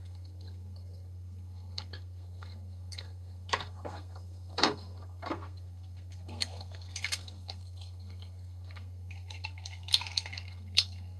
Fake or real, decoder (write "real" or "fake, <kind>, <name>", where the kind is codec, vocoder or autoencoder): fake, codec, SNAC